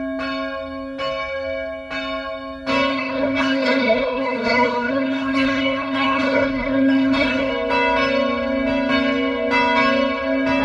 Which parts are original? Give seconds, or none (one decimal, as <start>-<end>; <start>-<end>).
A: 0.0-2.9; 7.5-10.6